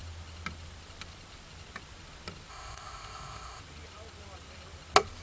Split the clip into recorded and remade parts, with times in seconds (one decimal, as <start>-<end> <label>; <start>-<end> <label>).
0.0-2.5 recorded; 2.5-3.6 remade; 3.6-5.2 recorded